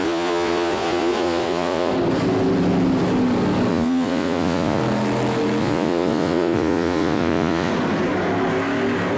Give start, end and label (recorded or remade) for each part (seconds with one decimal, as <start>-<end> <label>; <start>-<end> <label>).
0.0-1.9 remade; 1.9-3.7 recorded; 3.7-4.8 remade; 4.8-5.6 recorded; 5.6-7.7 remade; 7.7-9.2 recorded